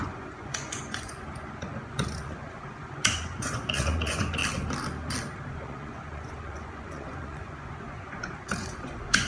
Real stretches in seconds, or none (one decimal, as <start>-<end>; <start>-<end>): 4.4-5.5